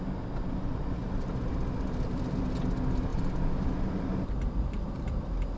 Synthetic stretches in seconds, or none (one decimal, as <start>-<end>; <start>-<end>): 1.0-1.5; 3.1-4.5